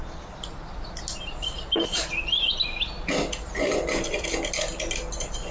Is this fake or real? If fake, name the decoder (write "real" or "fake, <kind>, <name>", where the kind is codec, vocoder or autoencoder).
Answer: real